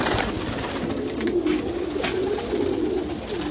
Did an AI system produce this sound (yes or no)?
no